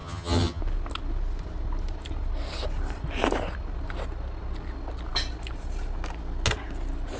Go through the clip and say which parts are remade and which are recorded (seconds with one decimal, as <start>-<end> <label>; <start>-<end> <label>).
0.0-0.6 remade; 0.6-7.2 recorded